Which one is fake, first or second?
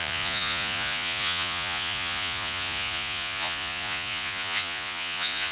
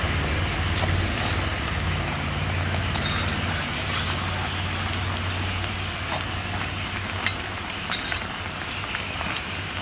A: first